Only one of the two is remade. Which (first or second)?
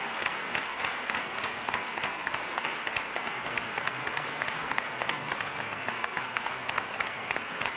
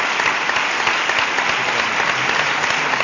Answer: first